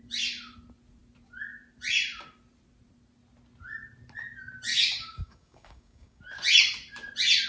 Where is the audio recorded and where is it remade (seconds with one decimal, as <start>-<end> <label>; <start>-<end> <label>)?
0.0-4.7 recorded; 4.7-6.2 remade; 6.2-7.5 recorded